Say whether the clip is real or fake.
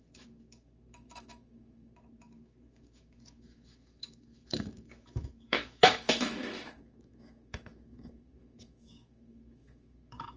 fake